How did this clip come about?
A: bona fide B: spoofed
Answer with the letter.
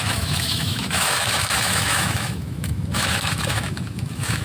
B